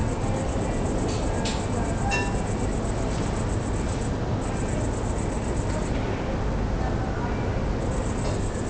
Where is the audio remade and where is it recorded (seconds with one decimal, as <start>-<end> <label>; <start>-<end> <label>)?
0.0-8.7 recorded